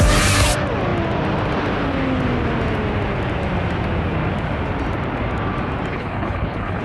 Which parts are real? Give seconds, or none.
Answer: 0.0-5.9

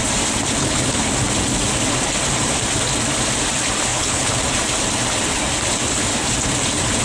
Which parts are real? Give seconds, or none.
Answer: 0.0-0.6; 1.1-3.9; 4.4-7.0

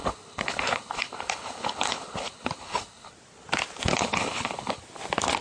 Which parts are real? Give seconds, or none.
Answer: 3.1-3.9; 4.8-5.4

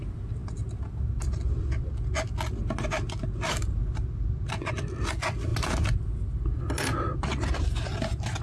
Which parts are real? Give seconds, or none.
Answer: 0.0-8.4

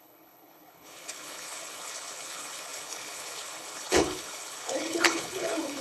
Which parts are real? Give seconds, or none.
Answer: none